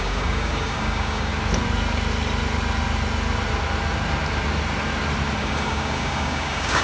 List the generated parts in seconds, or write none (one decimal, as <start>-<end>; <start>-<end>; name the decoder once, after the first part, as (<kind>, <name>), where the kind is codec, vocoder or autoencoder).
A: 0.0-1.3 (codec, DAC); 5.4-6.8